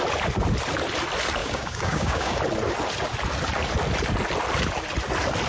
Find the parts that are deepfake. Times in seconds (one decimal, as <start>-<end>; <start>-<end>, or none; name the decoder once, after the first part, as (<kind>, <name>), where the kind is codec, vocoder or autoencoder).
1.4-2.4 (codec, DAC)